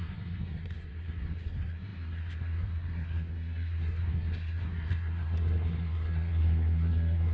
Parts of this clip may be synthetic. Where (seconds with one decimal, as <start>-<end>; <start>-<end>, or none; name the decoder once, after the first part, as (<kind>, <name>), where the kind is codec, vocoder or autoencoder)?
0.0-7.3 (codec, SNAC)